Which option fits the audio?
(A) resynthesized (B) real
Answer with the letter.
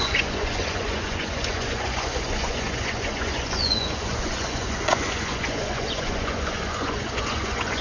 A